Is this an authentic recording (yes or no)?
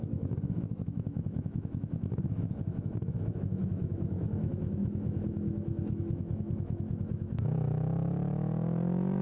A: no